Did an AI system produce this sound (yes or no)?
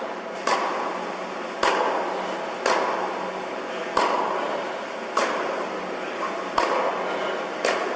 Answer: no